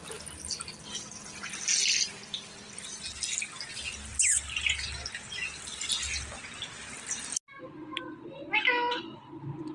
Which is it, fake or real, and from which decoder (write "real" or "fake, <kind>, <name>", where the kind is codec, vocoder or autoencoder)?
real